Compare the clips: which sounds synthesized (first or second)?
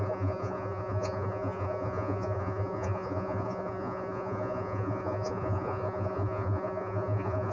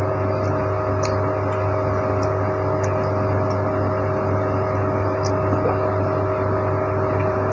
first